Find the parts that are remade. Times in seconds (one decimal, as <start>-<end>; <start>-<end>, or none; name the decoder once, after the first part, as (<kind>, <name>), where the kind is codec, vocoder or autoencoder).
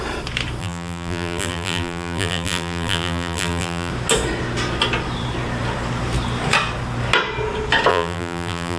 0.6-3.9 (vocoder, BigVGAN v2); 7.9-8.8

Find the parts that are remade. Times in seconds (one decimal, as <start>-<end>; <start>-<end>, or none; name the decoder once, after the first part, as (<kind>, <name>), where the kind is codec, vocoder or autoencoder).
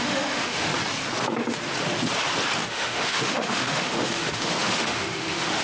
0.0-0.7 (autoencoder, DAC-VAE); 2.7-5.6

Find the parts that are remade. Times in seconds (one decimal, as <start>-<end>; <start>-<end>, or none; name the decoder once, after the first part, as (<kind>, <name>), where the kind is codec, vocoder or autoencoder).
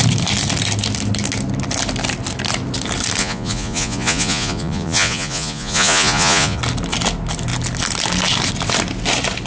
3.2-6.6 (vocoder, Vocos)